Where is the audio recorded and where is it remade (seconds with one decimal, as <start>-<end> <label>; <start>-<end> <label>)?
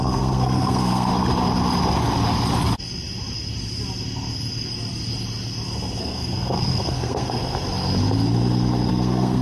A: 0.0-1.1 remade; 1.1-6.0 recorded; 6.0-7.4 remade; 7.4-8.9 recorded; 8.9-9.4 remade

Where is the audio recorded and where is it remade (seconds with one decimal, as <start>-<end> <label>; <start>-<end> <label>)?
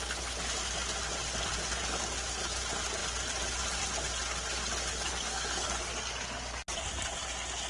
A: 0.0-5.1 recorded; 5.1-5.8 remade; 5.8-7.7 recorded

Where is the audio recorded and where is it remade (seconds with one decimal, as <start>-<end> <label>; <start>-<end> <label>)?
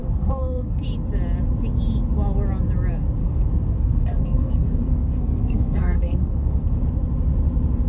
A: 0.0-0.8 remade; 0.8-3.2 recorded; 3.2-6.8 remade; 6.8-7.9 recorded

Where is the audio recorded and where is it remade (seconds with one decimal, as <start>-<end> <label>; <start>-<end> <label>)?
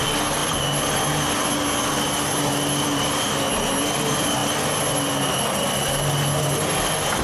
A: 0.0-7.2 recorded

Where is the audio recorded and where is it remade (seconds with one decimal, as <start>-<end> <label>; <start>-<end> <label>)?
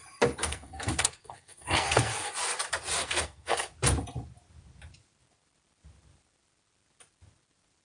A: 0.0-0.4 recorded; 0.4-2.3 remade; 2.3-3.0 recorded; 3.0-3.7 remade; 3.7-7.8 recorded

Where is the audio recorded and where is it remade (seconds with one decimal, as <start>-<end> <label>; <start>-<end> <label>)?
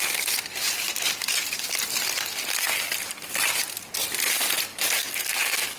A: 0.0-5.0 recorded; 5.0-5.8 remade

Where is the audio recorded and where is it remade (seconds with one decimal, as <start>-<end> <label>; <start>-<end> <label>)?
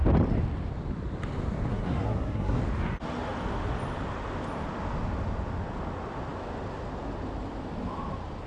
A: 0.0-1.7 recorded; 1.7-2.6 remade; 2.6-8.5 recorded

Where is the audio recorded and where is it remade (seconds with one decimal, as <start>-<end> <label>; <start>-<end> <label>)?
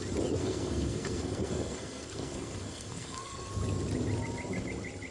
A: 0.0-0.4 recorded; 0.4-3.5 remade; 3.5-5.1 recorded